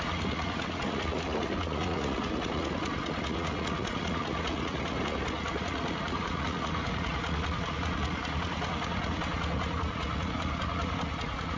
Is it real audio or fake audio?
fake